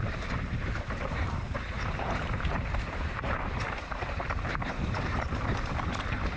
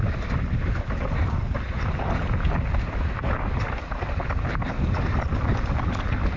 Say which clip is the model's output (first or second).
first